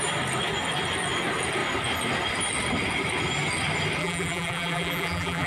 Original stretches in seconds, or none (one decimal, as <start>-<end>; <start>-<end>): 0.0-4.0